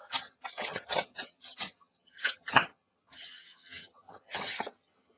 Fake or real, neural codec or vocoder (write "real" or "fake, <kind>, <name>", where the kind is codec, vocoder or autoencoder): fake, vocoder, HiFi-GAN